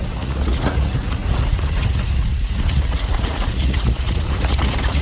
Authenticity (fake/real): fake